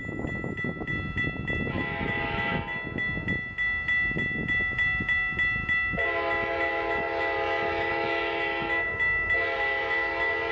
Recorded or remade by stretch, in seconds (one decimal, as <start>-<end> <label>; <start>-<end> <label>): 0.0-10.5 recorded